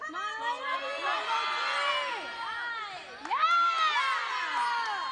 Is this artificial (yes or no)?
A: no